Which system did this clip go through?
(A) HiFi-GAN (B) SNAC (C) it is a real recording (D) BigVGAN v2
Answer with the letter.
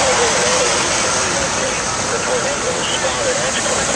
C